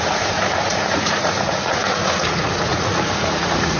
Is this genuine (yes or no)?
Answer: no